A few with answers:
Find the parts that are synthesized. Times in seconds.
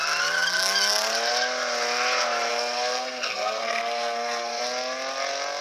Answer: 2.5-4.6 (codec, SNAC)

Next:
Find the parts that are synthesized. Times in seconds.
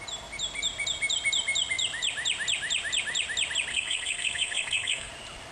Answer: 3.7-5.1 (codec, SNAC)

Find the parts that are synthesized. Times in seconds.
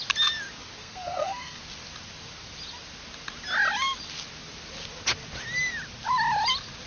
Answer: 0.8-1.6 (codec, SNAC)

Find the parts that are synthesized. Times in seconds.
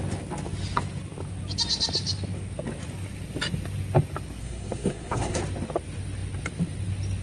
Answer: 4.4-5.4 (codec, SNAC)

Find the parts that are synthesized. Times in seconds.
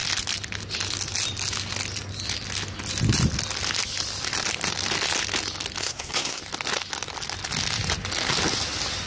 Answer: 5.8-6.4 (codec, SNAC)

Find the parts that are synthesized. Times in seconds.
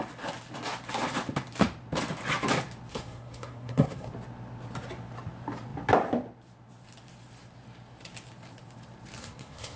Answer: 2.9-4.1 (codec, SNAC); 9.2-9.8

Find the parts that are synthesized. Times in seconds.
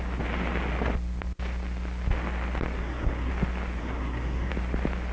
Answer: 2.8-3.3 (codec, SNAC); 3.8-4.5